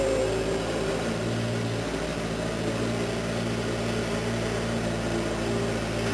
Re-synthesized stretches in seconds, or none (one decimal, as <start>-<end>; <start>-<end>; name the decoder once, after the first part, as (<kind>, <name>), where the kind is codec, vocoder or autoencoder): none